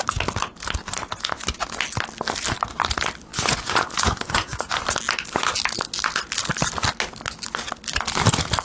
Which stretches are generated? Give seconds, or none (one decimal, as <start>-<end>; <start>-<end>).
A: 3.3-4.8